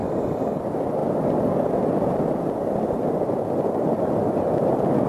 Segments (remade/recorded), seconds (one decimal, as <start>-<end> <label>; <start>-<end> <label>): 0.0-0.6 remade; 0.6-5.1 recorded